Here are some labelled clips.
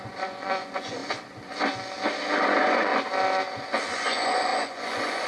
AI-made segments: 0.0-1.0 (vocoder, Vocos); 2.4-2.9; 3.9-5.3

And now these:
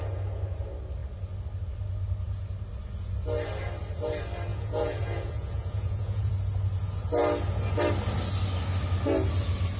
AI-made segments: 4.5-6.3 (vocoder, Vocos)

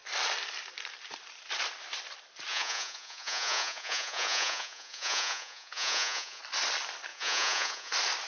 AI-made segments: 2.5-6.4 (vocoder, Vocos); 7.1-7.9

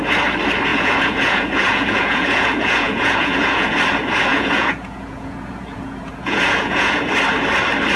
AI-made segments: 0.7-3.8 (vocoder, Vocos); 4.3-7.1

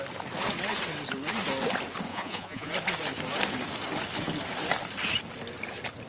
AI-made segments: 2.1-2.7 (vocoder, Vocos)